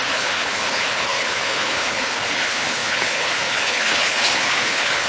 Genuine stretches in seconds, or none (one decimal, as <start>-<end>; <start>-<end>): none